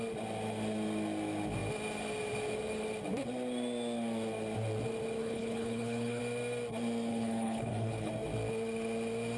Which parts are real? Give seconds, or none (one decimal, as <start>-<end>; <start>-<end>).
0.0-5.2; 6.2-7.1; 8.1-9.4